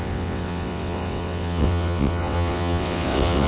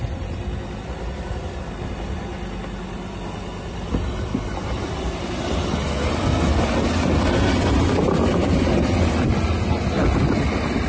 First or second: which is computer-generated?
first